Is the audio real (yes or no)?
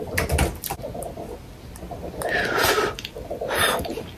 yes